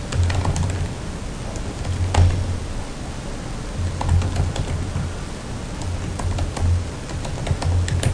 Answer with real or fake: real